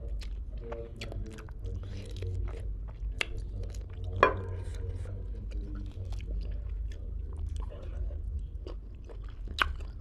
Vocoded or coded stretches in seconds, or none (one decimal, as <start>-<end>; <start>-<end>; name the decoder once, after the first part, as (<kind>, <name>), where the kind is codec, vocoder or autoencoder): none